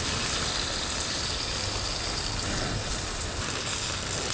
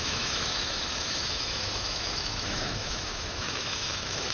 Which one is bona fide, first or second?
first